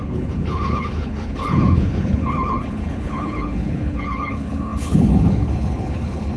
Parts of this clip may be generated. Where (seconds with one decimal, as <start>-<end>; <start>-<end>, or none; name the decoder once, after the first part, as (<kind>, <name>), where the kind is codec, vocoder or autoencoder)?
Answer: 0.0-6.4 (codec, HILCodec)